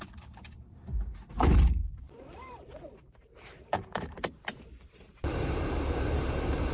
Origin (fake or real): fake